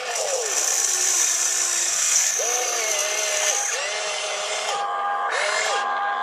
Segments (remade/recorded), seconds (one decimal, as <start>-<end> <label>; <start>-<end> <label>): 0.0-1.8 recorded; 1.8-2.3 remade; 2.3-6.2 recorded